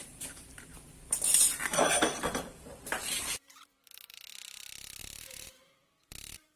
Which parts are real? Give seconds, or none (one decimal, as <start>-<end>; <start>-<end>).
0.7-1.4